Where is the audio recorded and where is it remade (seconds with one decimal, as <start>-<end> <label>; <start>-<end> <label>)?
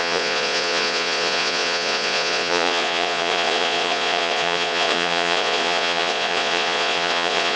0.0-7.6 remade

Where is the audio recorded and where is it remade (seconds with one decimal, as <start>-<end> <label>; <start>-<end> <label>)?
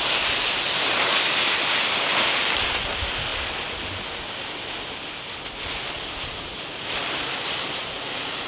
0.0-8.5 recorded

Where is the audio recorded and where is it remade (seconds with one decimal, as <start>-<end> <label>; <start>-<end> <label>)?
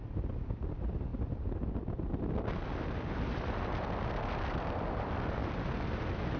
0.0-6.4 recorded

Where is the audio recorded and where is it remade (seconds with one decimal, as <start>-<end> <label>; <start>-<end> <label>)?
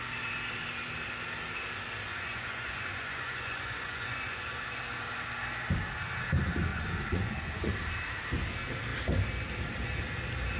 0.0-2.1 recorded; 2.1-4.8 remade; 4.8-6.7 recorded; 6.7-7.7 remade; 7.7-10.6 recorded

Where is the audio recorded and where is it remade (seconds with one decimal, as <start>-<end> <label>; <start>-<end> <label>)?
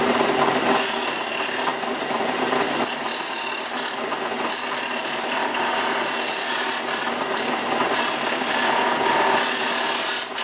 0.0-10.4 recorded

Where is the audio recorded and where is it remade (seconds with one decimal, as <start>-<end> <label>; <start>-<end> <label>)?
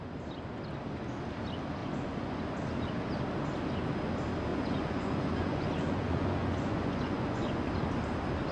0.0-1.8 recorded; 1.8-2.4 remade; 2.4-4.5 recorded; 4.5-7.7 remade; 7.7-8.5 recorded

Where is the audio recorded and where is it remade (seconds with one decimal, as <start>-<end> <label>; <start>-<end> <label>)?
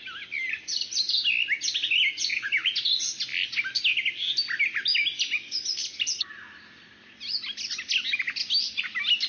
0.0-9.3 recorded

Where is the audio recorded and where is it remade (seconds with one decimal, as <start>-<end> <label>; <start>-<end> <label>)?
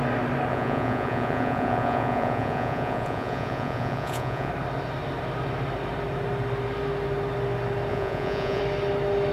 0.0-0.5 recorded; 0.5-4.5 remade; 4.5-7.9 recorded; 7.9-8.6 remade; 8.6-9.3 recorded